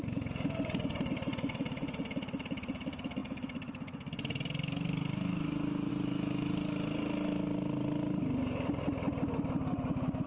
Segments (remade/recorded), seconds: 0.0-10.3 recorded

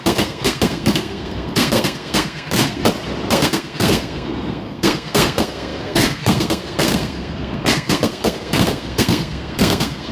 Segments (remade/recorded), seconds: 0.0-2.8 remade; 2.8-3.3 recorded; 3.3-10.1 remade

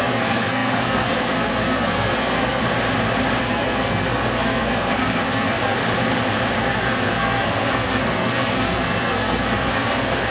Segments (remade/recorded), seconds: 0.0-2.6 remade; 2.6-3.4 recorded; 3.4-5.8 remade; 5.8-6.6 recorded; 6.6-10.3 remade

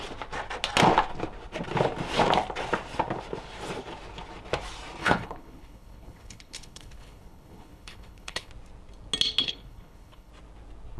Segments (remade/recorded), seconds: 0.0-5.0 recorded; 5.0-8.5 remade; 8.5-9.4 recorded; 9.4-10.3 remade; 10.3-11.0 recorded

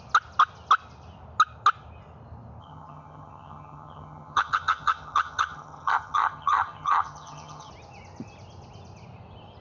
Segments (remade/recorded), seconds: 0.0-2.6 recorded; 2.6-7.7 remade; 7.7-9.6 recorded